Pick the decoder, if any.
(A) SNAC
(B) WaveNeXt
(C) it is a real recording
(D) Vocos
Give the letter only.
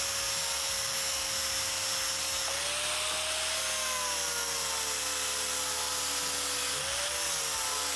C